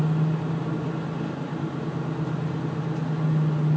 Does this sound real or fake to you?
real